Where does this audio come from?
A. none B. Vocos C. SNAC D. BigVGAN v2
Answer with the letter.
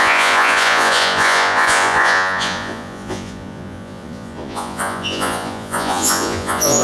B